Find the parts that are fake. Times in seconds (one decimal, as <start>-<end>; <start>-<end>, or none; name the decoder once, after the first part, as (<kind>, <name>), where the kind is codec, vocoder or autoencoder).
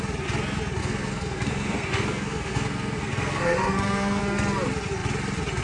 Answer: 0.8-4.2 (codec, SNAC)